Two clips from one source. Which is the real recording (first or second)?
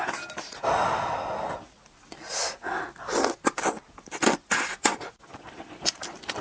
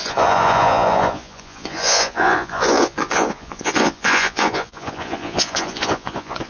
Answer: first